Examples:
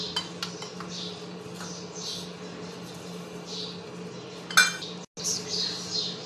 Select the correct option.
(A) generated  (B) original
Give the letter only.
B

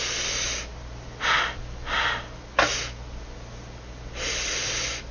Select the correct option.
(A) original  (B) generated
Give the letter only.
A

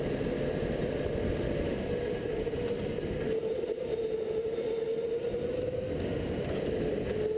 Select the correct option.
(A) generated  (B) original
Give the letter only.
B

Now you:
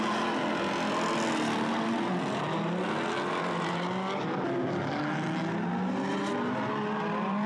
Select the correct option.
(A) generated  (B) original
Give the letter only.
B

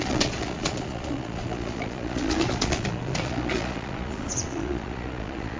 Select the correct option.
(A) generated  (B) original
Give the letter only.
A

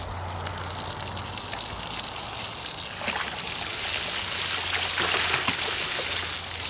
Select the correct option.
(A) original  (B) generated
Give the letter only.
A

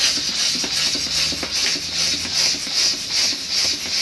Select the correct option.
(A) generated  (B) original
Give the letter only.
B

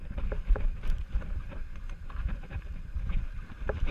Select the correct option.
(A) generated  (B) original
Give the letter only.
A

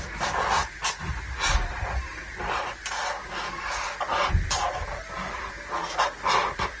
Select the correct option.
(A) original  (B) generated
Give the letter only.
A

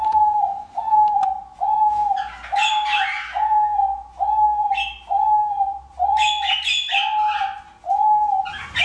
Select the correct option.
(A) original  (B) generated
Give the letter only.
A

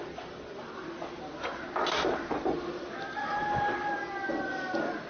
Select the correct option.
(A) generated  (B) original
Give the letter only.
B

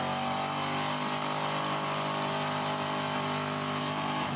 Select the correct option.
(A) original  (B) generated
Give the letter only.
A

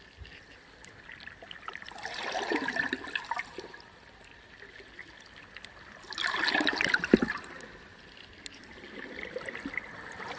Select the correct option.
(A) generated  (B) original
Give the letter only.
B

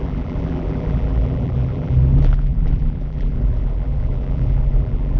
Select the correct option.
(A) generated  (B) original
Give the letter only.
A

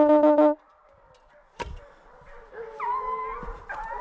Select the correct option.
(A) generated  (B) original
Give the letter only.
B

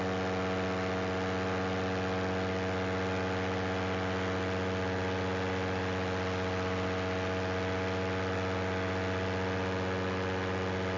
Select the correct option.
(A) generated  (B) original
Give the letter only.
B